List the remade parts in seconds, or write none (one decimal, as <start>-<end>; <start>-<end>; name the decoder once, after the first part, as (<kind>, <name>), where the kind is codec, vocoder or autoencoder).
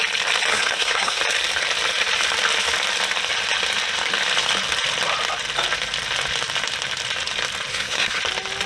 0.5-1.2 (codec, SNAC); 7.7-8.2